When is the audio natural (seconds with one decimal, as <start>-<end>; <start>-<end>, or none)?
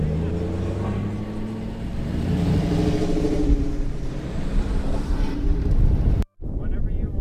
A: 0.0-2.1; 6.4-7.2